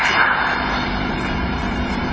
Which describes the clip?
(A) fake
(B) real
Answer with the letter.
A